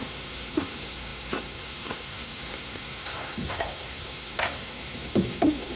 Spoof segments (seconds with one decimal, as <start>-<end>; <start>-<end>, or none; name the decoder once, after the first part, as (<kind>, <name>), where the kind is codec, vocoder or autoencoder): 0.0-5.8 (codec, SNAC)